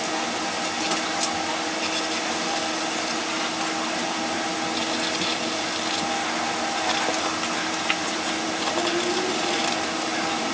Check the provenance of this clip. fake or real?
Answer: real